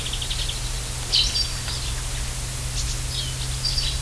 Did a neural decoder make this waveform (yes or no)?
no